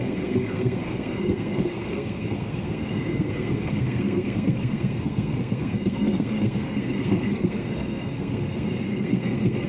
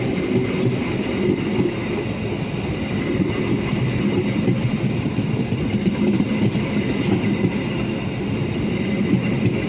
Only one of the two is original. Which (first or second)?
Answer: second